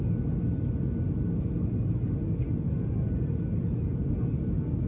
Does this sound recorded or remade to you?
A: recorded